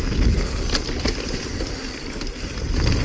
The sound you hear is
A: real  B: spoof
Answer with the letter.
A